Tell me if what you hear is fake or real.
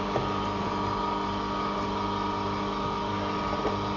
real